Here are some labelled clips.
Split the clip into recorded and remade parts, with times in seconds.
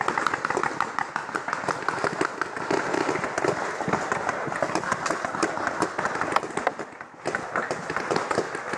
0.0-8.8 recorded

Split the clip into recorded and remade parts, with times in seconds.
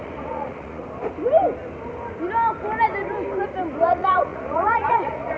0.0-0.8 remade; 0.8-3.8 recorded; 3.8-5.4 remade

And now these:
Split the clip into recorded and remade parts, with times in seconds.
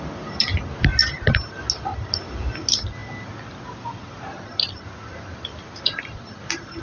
0.0-6.8 recorded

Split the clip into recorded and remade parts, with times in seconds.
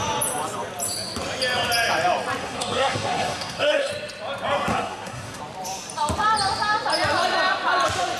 0.0-2.4 recorded; 2.4-3.9 remade; 3.9-4.7 recorded; 4.7-5.4 remade; 5.4-8.2 recorded